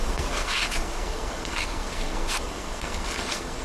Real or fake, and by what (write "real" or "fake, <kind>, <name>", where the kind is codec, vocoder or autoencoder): fake, codec, SNAC